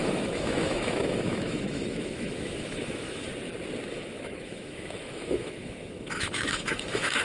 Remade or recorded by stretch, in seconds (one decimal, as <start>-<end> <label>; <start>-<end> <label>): 0.0-3.3 remade; 3.3-3.9 recorded; 3.9-7.2 remade